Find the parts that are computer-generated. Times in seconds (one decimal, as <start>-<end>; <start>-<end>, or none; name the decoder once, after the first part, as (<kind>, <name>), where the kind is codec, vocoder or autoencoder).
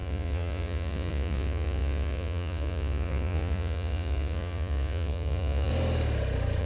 0.0-5.7 (vocoder, Vocos)